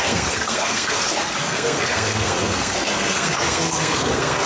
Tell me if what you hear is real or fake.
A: fake